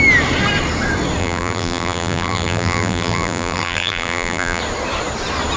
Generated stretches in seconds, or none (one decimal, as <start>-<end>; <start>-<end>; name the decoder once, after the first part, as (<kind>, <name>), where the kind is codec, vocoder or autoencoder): 1.2-4.6 (vocoder, BigVGAN v2)